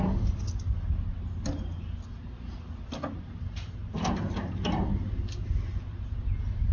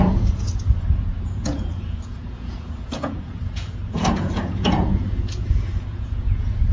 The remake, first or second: second